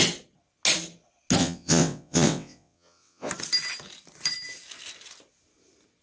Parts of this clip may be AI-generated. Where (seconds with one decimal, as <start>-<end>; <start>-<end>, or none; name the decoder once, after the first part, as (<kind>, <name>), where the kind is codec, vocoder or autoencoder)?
1.4-3.3 (vocoder, WaveNeXt)